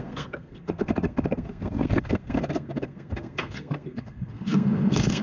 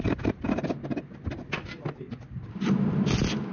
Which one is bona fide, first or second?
second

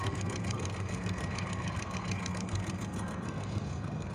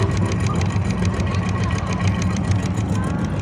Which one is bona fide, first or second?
second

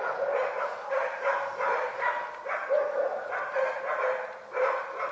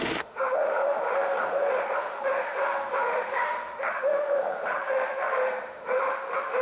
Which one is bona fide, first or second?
first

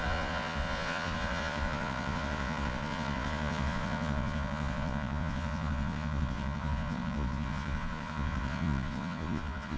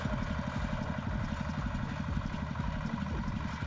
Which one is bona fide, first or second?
second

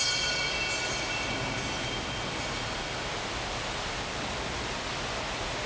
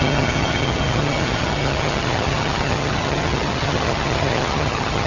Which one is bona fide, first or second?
first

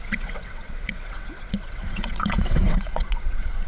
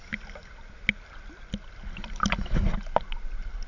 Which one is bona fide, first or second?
second